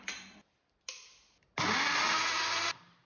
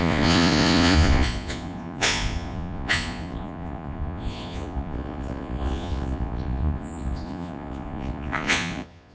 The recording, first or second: first